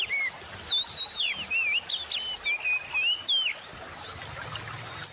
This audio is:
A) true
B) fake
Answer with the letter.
A